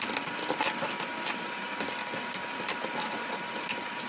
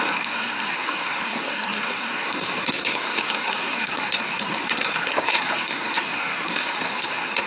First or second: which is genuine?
first